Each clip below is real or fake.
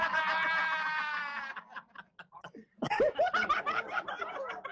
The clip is real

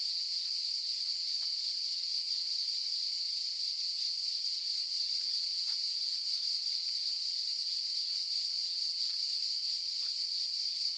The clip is fake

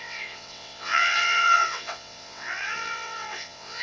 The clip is fake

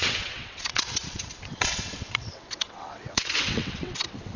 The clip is fake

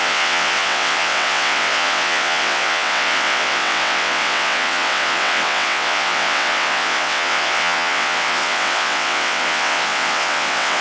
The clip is fake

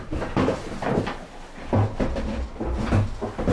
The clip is real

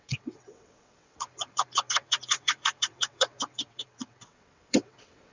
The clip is fake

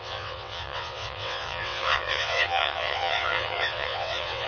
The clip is fake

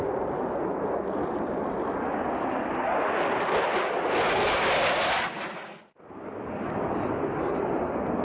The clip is real